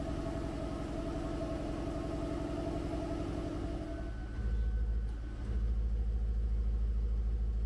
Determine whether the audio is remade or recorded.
recorded